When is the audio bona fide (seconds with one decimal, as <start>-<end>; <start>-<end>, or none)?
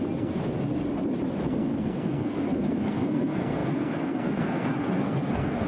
0.4-1.4